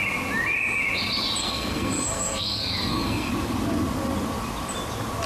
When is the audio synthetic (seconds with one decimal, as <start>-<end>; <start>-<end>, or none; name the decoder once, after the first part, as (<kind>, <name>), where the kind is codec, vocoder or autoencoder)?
1.4-3.3 (codec, SNAC)